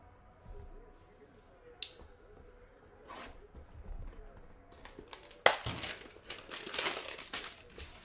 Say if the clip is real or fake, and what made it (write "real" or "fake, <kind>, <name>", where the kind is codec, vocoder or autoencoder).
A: real